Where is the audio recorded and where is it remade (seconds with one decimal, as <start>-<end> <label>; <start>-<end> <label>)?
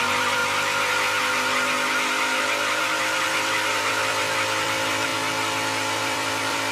0.0-0.4 remade; 0.4-2.4 recorded; 2.4-5.1 remade; 5.1-6.0 recorded; 6.0-6.7 remade